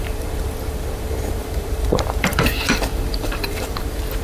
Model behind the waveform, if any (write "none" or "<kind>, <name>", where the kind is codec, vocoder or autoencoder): vocoder, BigVGAN v2